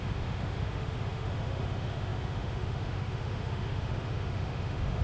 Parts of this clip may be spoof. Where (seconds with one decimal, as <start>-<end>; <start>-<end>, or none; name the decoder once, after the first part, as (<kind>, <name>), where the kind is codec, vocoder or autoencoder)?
0.0-5.0 (autoencoder, DAC-VAE)